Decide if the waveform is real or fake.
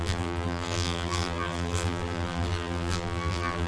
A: fake